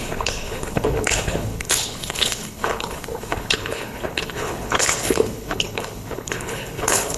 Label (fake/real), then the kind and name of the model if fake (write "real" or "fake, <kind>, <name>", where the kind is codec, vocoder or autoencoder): fake, codec, HILCodec